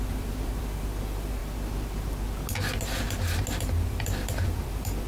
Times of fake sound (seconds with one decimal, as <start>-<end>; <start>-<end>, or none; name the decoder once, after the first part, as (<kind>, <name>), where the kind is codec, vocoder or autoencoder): 0.0-1.4 (vocoder, BigVGAN v2); 3.6-5.1